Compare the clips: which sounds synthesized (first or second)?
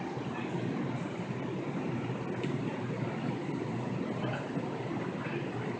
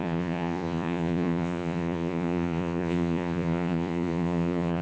second